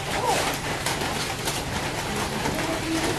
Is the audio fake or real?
real